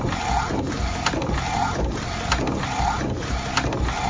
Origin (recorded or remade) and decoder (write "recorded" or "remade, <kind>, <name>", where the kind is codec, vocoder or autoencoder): recorded